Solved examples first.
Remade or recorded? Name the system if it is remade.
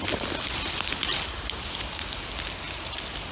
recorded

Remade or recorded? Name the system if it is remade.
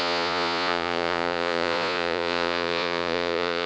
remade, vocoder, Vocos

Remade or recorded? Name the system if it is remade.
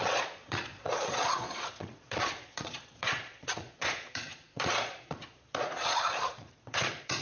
remade, vocoder, Vocos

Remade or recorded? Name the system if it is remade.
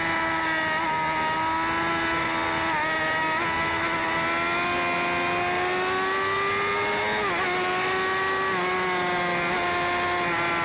recorded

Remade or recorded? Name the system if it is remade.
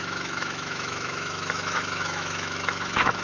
remade, autoencoder, DAC-VAE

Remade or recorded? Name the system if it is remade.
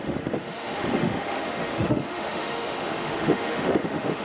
remade, autoencoder, DAC-VAE